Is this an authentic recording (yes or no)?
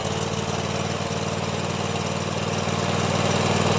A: yes